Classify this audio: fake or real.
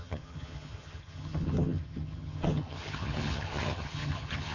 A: fake